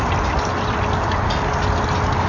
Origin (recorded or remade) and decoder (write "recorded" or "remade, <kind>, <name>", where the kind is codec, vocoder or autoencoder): recorded